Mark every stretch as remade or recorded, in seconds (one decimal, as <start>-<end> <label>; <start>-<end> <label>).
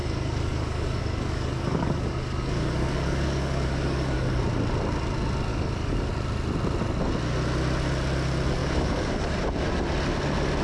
0.0-4.4 remade; 4.4-5.5 recorded; 5.5-6.1 remade; 6.1-8.6 recorded; 8.6-9.4 remade; 9.4-10.6 recorded